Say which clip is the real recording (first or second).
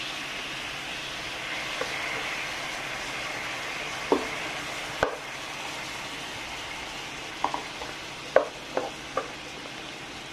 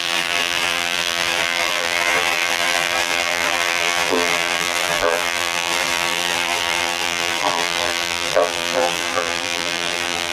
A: first